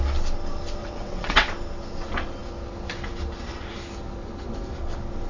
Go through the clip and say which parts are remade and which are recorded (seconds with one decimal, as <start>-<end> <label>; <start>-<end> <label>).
0.0-0.8 recorded; 0.8-1.5 remade; 1.5-5.3 recorded